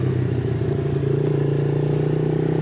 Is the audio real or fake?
real